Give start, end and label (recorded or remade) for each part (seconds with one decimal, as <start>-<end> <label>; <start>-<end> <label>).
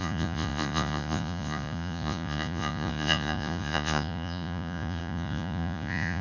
0.0-6.2 remade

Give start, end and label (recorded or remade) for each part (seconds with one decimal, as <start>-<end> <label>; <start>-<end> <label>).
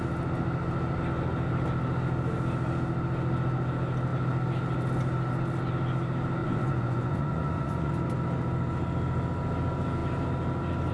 0.0-6.4 recorded; 6.4-7.9 remade; 7.9-10.9 recorded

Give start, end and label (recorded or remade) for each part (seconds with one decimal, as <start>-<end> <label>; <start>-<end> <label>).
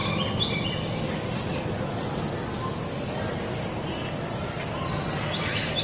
0.0-5.8 recorded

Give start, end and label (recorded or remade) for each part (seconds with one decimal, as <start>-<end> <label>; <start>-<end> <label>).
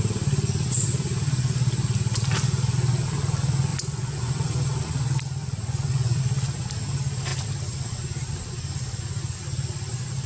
0.0-3.7 recorded; 3.7-4.3 remade; 4.3-5.4 recorded; 5.4-6.2 remade; 6.2-10.3 recorded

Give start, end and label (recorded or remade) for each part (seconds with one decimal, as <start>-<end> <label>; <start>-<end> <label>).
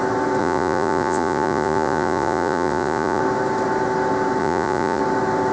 0.0-0.4 recorded; 0.4-3.2 remade; 3.2-4.4 recorded; 4.4-5.0 remade; 5.0-5.5 recorded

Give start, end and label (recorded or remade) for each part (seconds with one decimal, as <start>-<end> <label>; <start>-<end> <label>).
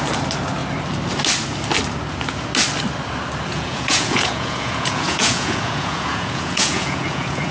0.0-3.5 recorded; 3.5-7.5 remade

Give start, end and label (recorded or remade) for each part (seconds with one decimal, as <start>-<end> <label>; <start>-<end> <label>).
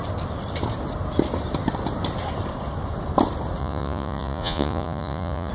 0.0-3.6 recorded; 3.6-5.5 remade